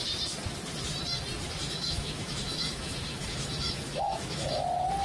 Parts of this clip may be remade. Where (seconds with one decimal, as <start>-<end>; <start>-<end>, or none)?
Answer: 1.6-4.6